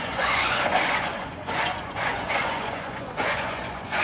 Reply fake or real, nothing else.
fake